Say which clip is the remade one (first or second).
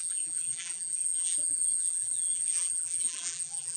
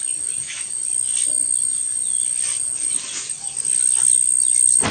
first